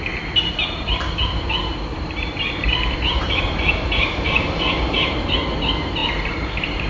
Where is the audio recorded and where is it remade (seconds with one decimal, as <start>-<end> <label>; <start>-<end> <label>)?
0.0-1.9 recorded; 1.9-5.3 remade; 5.3-6.0 recorded; 6.0-6.9 remade